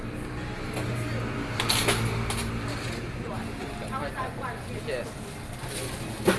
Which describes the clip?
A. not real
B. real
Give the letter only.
B